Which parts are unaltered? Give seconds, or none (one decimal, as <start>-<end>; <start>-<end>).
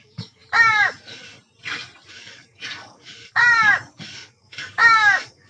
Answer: 0.4-2.1; 3.4-3.9